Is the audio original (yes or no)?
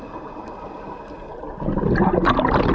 yes